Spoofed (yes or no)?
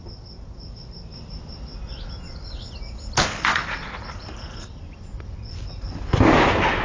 no